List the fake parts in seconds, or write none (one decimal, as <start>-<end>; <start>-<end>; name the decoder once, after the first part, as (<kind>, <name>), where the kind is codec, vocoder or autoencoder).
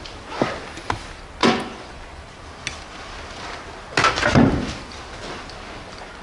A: 1.4-2.3 (vocoder, Vocos)